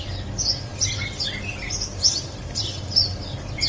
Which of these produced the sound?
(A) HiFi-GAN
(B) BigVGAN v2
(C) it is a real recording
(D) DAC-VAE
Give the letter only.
C